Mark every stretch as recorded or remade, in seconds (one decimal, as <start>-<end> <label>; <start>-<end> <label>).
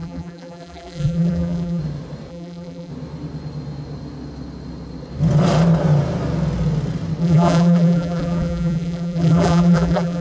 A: 0.0-1.8 remade; 1.8-2.3 recorded; 2.3-2.9 remade; 2.9-7.2 recorded; 7.2-10.2 remade